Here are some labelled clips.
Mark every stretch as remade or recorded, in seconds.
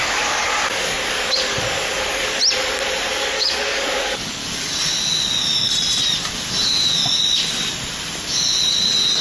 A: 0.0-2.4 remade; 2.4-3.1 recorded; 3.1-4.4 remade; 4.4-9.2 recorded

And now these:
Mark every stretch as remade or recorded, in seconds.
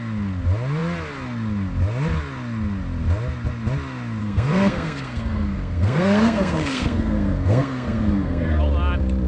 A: 0.0-4.2 recorded; 4.2-8.6 remade; 8.6-9.3 recorded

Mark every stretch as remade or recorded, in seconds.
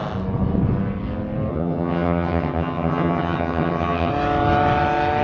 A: 0.0-1.5 recorded; 1.5-4.1 remade; 4.1-5.2 recorded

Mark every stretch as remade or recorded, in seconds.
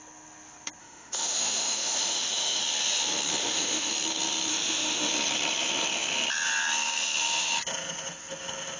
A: 0.0-0.8 recorded; 0.8-2.6 remade; 2.6-3.4 recorded; 3.4-3.9 remade; 3.9-4.5 recorded; 4.5-5.1 remade; 5.1-8.8 recorded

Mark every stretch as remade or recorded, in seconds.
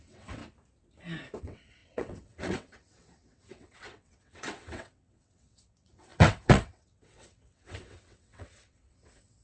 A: 0.0-0.4 remade; 0.4-1.4 recorded; 1.4-9.4 remade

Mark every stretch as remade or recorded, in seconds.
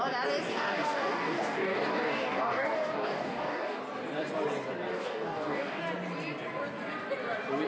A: 0.0-0.5 recorded; 0.5-3.8 remade; 3.8-4.9 recorded; 4.9-5.8 remade; 5.8-7.7 recorded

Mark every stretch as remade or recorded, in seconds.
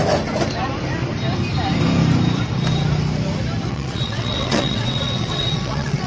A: 0.0-3.7 recorded; 3.7-6.1 remade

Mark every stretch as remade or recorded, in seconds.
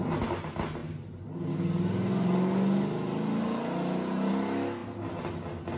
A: 0.0-5.8 recorded